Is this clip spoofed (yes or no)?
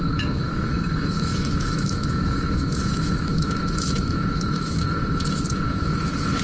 yes